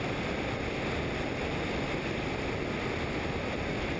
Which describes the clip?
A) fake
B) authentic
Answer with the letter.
B